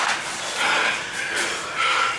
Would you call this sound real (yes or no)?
yes